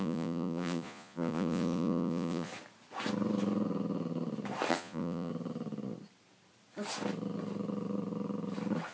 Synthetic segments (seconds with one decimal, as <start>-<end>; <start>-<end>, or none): 0.0-2.5; 4.7-5.3